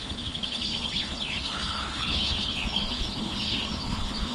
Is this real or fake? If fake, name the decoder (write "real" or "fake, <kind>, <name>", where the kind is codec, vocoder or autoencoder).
fake, codec, HILCodec